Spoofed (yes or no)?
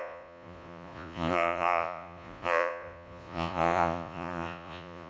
yes